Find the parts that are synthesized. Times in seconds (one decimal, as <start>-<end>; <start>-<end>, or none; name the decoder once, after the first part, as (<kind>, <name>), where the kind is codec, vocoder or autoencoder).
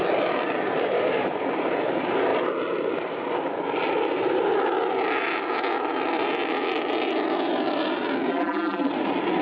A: 8.3-8.9 (vocoder, BigVGAN v2)